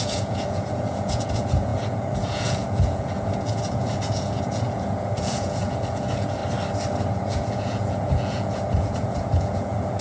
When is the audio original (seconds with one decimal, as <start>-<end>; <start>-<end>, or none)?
6.4-7.1